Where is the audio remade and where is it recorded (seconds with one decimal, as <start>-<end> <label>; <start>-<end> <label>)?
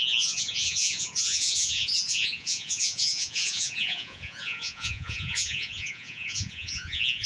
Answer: 0.0-7.3 remade